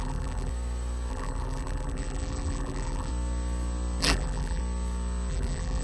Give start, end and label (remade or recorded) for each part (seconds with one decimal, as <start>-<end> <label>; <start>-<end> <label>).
0.0-0.5 remade; 0.5-1.1 recorded; 1.1-3.1 remade; 3.1-4.0 recorded; 4.0-4.6 remade; 4.6-5.3 recorded; 5.3-5.8 remade

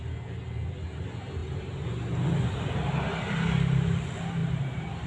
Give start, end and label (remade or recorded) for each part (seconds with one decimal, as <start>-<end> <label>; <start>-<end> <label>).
0.0-1.4 recorded; 1.4-2.7 remade; 2.7-4.4 recorded; 4.4-5.1 remade

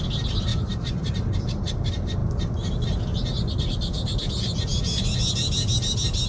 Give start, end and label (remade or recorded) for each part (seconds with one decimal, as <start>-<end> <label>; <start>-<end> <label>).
0.0-0.5 recorded; 0.5-1.1 remade; 1.1-6.3 recorded

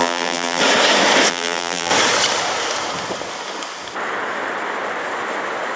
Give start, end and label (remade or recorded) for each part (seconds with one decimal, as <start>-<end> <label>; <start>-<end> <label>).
0.0-0.6 remade; 0.6-1.3 recorded; 1.3-1.9 remade; 1.9-5.8 recorded

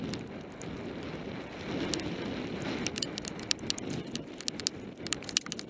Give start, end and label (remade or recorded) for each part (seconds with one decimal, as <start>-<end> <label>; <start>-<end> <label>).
0.0-5.7 recorded

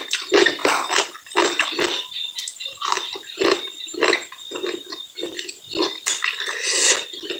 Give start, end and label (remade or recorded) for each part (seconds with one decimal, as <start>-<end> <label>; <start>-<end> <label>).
0.0-7.4 recorded